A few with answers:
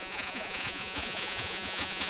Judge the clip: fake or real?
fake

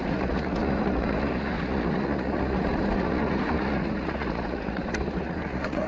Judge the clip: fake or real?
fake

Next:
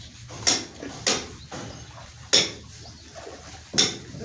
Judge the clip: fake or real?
real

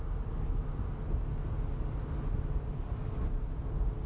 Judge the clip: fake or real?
real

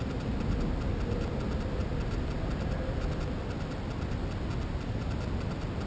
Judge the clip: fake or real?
real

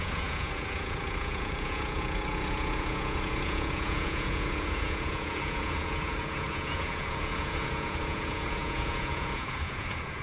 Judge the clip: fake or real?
fake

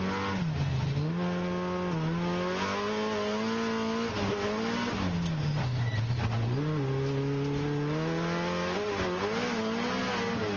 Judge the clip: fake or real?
real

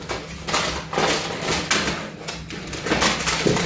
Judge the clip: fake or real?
real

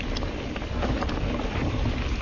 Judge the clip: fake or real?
real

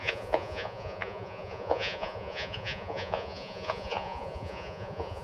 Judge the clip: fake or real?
fake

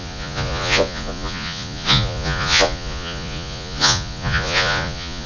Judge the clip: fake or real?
fake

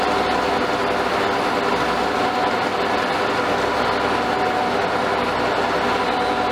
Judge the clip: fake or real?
real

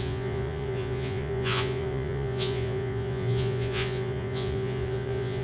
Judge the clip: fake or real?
fake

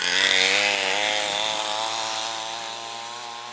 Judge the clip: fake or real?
real